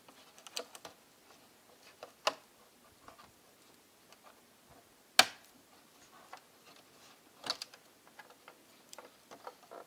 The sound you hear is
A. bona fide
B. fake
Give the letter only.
A